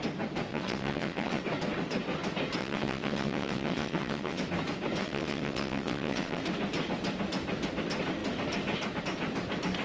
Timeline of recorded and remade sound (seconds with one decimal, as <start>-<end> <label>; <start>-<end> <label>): 0.0-0.5 recorded; 0.5-1.4 remade; 1.4-2.6 recorded; 2.6-4.4 remade; 4.4-5.0 recorded; 5.0-6.4 remade; 6.4-9.8 recorded